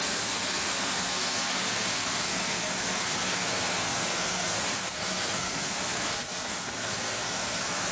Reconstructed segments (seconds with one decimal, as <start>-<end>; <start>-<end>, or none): 0.0-7.9